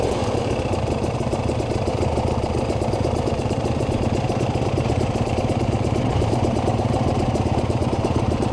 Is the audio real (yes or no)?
no